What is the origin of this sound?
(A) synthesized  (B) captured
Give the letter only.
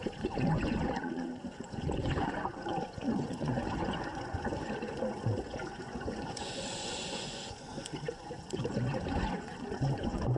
A